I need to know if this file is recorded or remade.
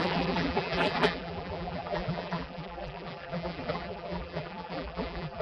remade